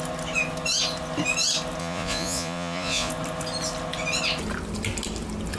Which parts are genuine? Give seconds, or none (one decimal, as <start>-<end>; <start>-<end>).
0.0-1.8; 3.1-5.6

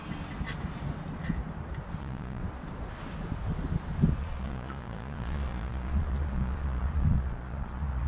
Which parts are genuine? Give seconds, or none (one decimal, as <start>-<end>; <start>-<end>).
0.0-2.0; 2.4-4.2

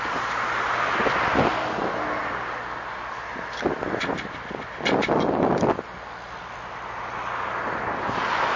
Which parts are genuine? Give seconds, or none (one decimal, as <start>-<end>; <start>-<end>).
0.0-8.6

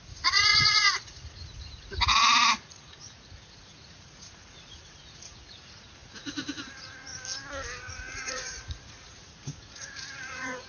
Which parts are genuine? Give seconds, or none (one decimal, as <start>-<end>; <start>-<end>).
7.1-7.8